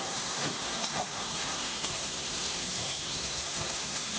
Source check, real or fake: fake